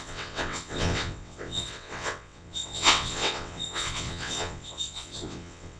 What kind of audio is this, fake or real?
fake